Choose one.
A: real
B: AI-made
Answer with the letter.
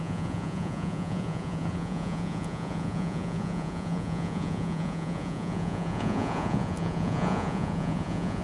B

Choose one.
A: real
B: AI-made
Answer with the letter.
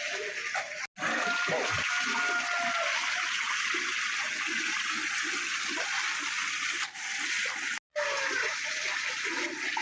A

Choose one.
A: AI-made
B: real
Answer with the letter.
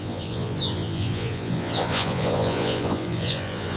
A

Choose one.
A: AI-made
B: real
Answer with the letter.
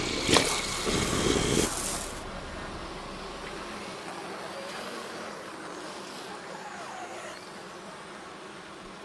B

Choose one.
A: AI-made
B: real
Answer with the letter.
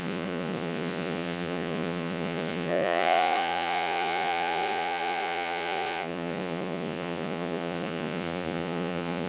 A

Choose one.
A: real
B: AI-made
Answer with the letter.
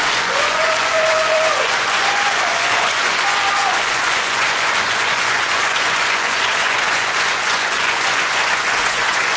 B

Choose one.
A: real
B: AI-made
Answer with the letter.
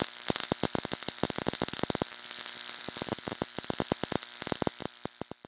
A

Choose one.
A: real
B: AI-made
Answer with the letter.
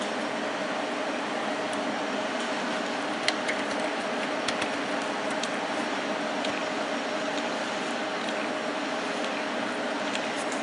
A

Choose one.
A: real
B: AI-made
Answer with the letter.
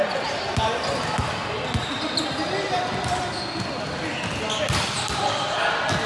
A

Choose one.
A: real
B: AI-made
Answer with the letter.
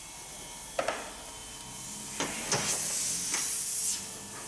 A